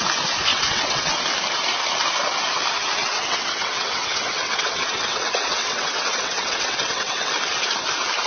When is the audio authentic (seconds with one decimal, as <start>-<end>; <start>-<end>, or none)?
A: 0.0-0.5; 1.1-3.0; 7.3-8.3